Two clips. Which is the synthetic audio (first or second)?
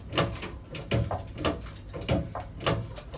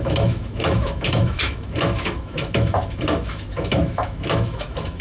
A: second